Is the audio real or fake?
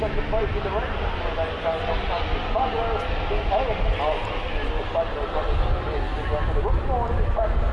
real